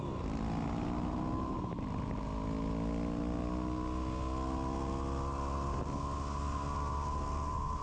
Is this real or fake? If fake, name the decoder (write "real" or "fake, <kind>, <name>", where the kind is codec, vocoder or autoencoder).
real